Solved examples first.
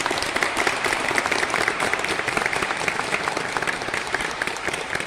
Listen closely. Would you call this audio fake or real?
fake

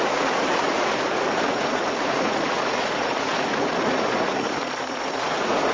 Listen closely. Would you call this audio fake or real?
fake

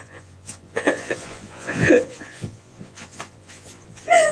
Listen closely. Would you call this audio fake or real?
fake